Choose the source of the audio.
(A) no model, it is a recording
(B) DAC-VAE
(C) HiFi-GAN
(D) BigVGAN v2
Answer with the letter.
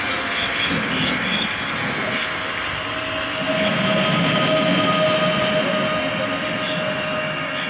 A